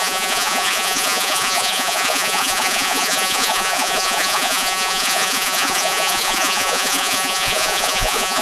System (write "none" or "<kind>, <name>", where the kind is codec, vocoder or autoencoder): vocoder, Vocos